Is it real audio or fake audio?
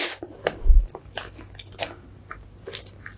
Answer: real